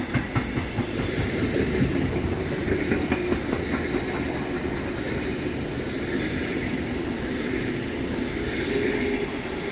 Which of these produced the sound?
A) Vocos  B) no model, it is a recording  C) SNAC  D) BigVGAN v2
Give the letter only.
B